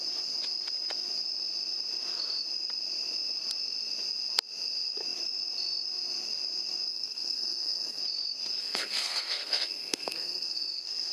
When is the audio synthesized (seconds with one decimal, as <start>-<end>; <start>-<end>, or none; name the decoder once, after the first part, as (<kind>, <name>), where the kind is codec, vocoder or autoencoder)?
6.9-8.0 (codec, SNAC); 8.6-11.1